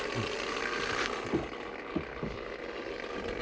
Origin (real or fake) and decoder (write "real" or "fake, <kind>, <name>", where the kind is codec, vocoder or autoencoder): real